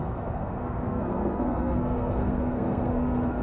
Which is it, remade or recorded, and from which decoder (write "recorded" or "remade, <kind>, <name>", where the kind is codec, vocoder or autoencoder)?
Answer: remade, codec, SNAC